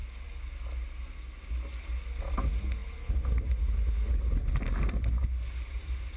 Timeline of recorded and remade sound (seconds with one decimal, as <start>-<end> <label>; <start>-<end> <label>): 0.0-6.2 recorded